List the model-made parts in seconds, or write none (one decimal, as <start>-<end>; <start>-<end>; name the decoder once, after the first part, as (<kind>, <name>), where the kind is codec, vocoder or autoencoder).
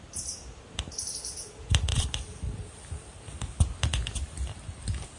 1.9-3.4 (vocoder, BigVGAN v2)